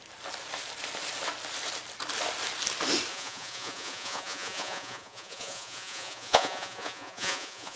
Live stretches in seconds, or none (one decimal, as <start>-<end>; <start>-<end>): 0.0-3.1